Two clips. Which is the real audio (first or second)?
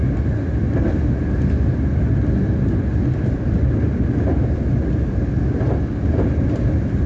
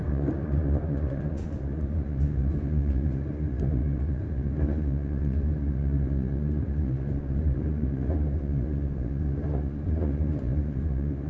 first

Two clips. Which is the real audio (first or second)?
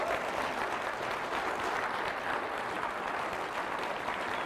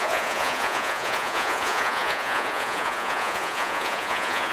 first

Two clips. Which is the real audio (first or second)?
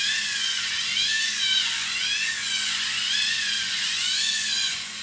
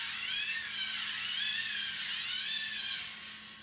second